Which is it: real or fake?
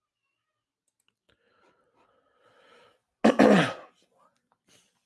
real